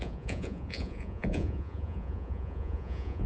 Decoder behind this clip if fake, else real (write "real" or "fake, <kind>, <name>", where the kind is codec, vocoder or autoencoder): fake, vocoder, Vocos